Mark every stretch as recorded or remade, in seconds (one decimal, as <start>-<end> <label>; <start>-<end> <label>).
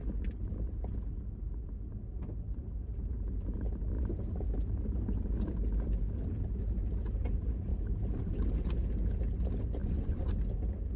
0.0-9.8 recorded; 9.8-10.3 remade; 10.3-11.0 recorded